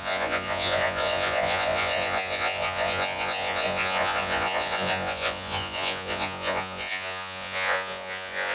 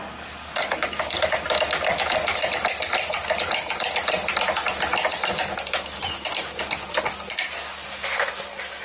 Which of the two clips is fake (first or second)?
first